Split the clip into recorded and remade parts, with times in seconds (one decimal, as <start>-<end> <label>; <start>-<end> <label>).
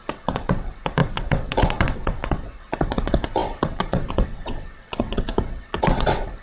0.0-6.4 remade